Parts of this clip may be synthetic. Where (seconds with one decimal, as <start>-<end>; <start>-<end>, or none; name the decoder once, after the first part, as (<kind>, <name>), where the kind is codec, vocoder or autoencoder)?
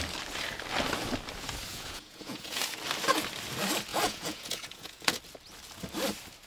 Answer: 1.7-2.6 (vocoder, Vocos); 3.9-5.2